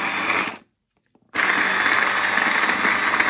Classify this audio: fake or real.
real